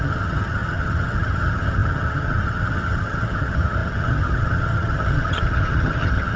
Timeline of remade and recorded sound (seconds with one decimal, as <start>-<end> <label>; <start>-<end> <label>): 0.0-6.4 remade

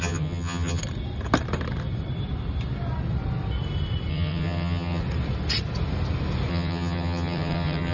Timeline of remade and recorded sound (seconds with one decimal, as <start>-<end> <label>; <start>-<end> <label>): 0.0-0.8 remade; 0.8-4.1 recorded; 4.1-5.0 remade; 5.0-6.5 recorded; 6.5-7.9 remade

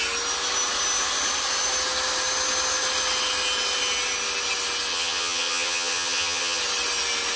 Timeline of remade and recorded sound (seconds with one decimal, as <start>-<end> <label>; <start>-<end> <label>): 0.0-4.9 recorded; 4.9-6.6 remade; 6.6-7.4 recorded